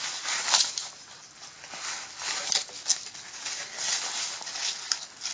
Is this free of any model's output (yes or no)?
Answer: yes